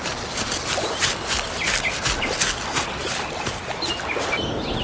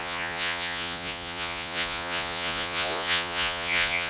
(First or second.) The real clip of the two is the first